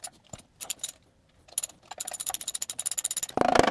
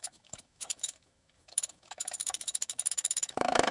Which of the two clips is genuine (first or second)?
first